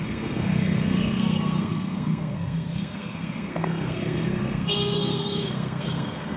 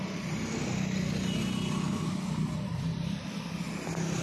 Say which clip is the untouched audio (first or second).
second